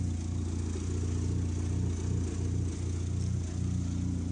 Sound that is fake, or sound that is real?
real